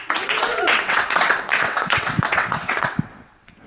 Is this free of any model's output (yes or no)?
no